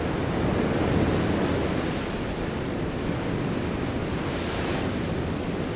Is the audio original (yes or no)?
yes